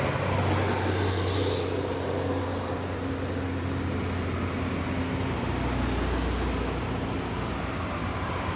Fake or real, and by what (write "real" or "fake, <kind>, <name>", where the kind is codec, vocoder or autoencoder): real